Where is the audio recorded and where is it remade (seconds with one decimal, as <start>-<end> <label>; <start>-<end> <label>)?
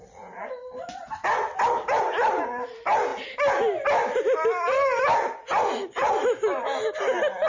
0.0-7.5 recorded